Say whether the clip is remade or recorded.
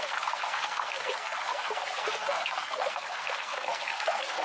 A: remade